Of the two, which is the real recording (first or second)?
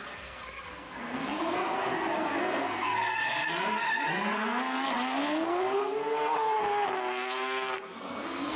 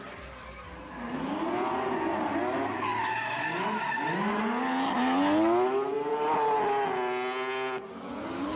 second